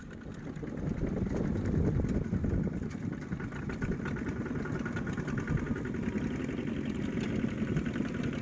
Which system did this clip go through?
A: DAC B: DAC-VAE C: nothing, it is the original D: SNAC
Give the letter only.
C